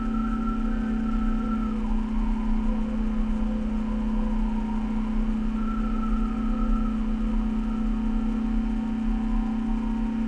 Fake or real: real